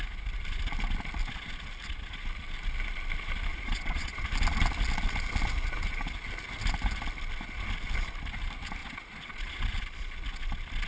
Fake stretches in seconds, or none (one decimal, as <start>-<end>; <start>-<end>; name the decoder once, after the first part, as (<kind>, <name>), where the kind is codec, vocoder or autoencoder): 3.5-4.3 (vocoder, Vocos); 8.8-9.6